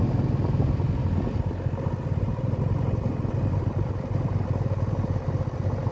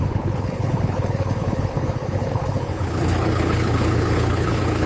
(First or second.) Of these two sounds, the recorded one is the first